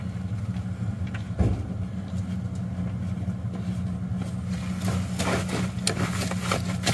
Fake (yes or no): no